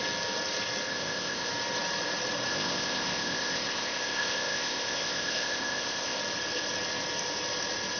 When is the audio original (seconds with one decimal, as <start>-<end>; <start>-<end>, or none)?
0.0-0.9; 1.5-2.5; 6.2-8.0